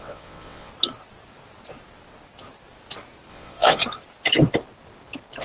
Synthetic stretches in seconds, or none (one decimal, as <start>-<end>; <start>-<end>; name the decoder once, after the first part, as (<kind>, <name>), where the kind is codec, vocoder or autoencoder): 0.0-0.7 (vocoder, WaveNeXt); 3.3-3.8